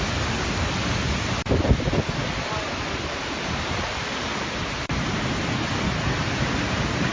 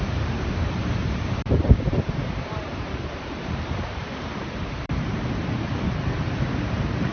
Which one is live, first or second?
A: first